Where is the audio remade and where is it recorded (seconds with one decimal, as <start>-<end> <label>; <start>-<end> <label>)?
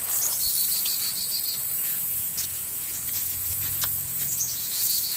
0.0-1.8 recorded; 1.8-5.2 remade